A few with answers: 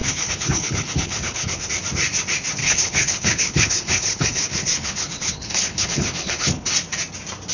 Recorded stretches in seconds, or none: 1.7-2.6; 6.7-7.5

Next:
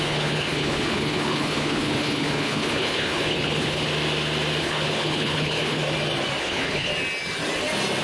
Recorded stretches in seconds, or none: 3.9-4.6; 5.8-6.4; 6.9-8.0

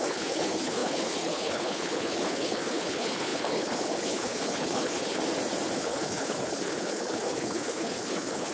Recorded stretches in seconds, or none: 5.2-5.8

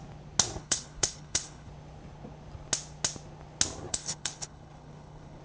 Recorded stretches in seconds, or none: 0.0-0.6; 1.7-3.9

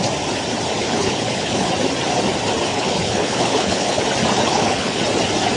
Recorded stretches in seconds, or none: 0.0-0.8; 1.7-2.7; 4.0-4.4; 5.0-5.6

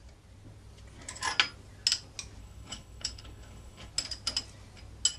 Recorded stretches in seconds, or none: 0.0-2.4; 3.9-5.2

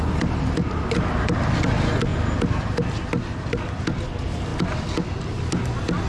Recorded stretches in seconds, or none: 0.0-6.1